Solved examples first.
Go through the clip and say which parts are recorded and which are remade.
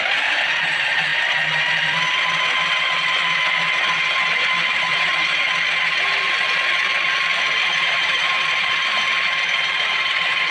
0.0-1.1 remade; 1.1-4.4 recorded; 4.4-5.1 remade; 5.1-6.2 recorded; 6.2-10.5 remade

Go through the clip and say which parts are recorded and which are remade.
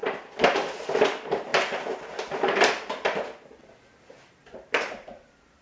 0.0-0.7 recorded; 0.7-1.5 remade; 1.5-2.2 recorded; 2.2-5.6 remade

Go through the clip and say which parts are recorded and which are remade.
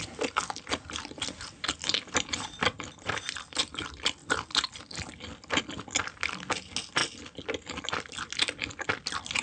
0.0-9.4 recorded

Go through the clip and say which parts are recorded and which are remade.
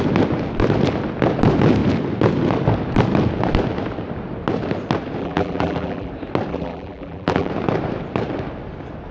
0.0-5.2 recorded; 5.2-6.1 remade; 6.1-6.5 recorded; 6.5-7.5 remade; 7.5-9.1 recorded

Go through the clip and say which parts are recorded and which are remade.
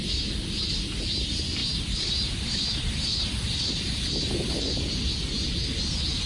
0.0-1.6 recorded; 1.6-4.9 remade; 4.9-6.3 recorded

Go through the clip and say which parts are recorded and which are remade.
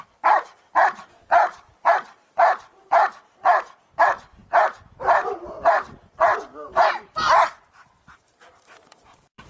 0.0-9.5 remade